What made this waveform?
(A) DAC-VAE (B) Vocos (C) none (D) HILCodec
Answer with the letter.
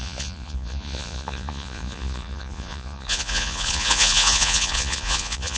B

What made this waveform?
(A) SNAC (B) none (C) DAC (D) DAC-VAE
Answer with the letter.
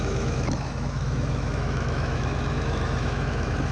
D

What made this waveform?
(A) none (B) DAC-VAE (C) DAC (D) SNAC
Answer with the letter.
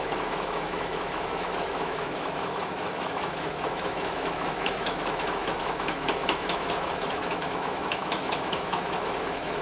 B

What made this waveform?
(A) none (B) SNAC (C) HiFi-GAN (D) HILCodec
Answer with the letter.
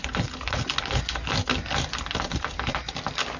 A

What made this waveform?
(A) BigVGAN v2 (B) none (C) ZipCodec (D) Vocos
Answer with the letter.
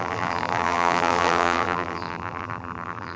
A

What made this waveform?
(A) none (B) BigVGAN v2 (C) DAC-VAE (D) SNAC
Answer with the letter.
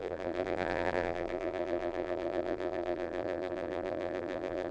B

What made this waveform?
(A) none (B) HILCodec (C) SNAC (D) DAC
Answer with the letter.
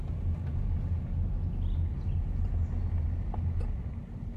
A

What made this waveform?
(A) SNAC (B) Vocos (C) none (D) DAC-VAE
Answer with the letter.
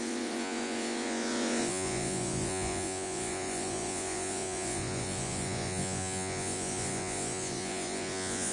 B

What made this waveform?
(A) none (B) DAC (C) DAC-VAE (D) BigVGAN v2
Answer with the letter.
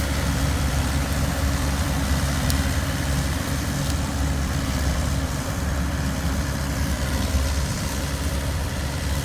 D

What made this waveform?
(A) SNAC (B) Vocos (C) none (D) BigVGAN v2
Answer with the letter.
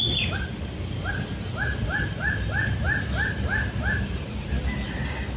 C